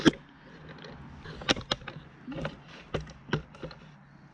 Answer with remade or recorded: recorded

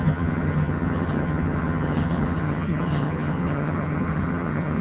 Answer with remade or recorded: remade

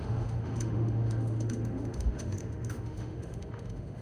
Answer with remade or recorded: remade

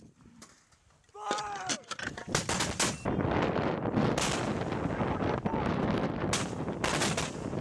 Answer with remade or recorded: recorded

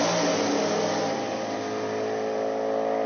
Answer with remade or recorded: recorded